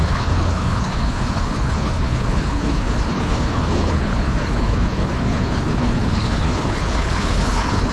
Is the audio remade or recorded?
remade